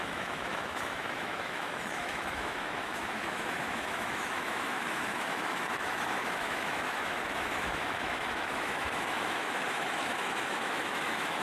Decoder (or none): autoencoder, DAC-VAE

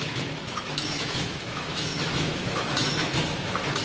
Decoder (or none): autoencoder, DAC-VAE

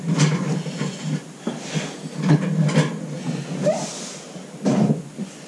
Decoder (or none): none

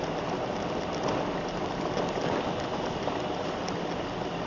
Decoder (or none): none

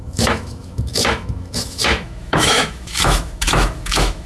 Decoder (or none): autoencoder, DAC-VAE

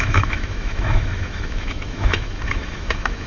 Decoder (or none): autoencoder, DAC-VAE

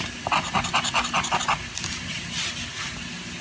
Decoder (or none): none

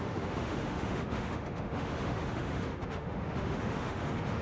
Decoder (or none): autoencoder, DAC-VAE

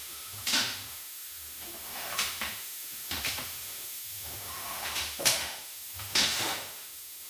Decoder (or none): autoencoder, DAC-VAE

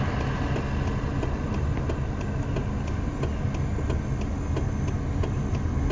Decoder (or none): none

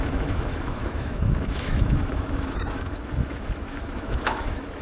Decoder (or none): autoencoder, DAC-VAE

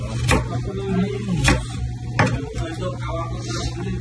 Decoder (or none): none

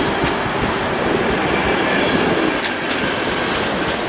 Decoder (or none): none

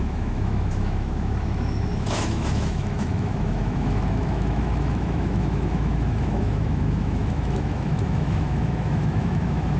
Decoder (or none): autoencoder, DAC-VAE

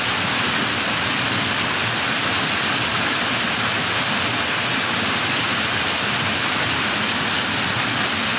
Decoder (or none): none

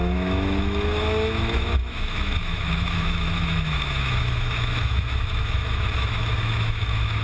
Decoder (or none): autoencoder, DAC-VAE